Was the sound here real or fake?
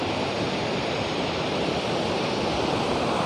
fake